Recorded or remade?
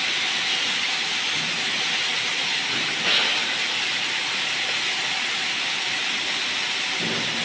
recorded